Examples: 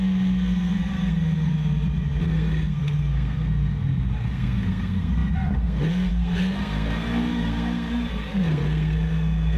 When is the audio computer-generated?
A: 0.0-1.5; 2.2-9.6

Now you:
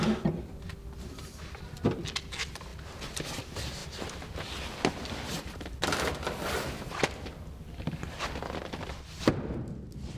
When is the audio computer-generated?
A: none

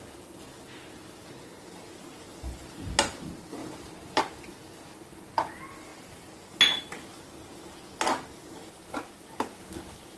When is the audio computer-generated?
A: 2.3-2.9; 3.6-4.2